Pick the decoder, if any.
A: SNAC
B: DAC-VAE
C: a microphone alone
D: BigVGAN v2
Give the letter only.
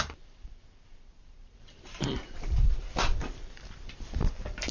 D